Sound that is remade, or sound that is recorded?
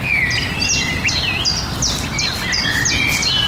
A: recorded